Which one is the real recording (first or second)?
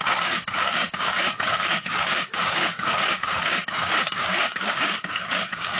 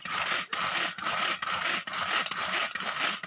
second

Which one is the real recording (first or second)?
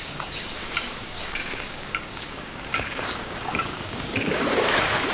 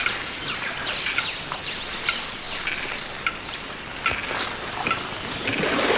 second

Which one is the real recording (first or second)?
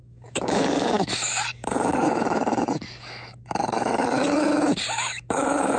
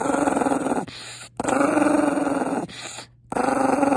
second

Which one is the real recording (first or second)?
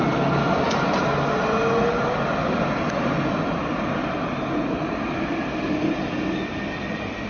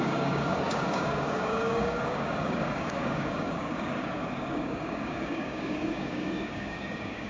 first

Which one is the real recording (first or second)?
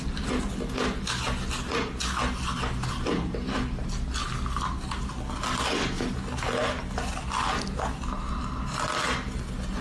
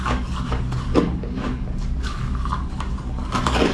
first